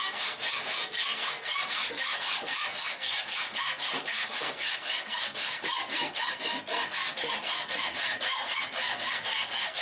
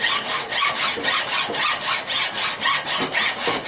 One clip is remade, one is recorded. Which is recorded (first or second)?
second